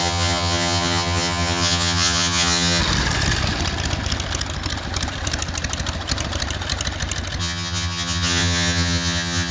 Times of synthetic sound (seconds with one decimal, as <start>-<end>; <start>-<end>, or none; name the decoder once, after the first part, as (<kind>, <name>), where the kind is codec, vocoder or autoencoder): 0.0-2.8 (vocoder, HiFi-GAN); 7.4-9.5